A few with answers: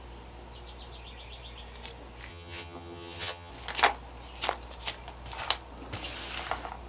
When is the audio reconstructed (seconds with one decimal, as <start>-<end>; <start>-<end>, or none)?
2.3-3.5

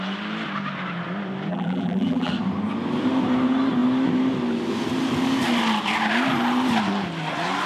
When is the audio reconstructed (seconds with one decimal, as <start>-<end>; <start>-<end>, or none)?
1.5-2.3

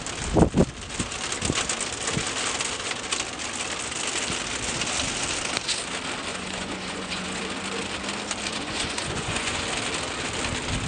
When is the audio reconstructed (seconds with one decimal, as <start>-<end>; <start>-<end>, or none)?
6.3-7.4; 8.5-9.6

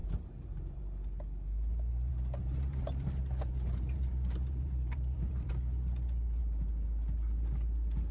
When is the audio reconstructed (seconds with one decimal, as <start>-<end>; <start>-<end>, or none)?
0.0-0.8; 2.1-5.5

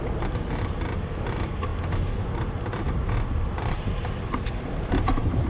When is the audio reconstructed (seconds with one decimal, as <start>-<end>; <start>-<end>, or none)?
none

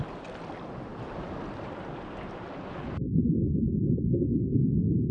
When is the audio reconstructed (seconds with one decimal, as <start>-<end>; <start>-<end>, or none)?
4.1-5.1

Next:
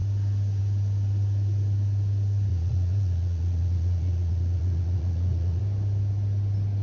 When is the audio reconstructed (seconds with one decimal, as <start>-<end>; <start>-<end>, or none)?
2.5-5.6